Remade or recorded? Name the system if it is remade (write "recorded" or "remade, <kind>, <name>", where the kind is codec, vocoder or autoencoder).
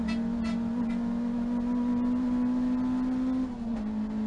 recorded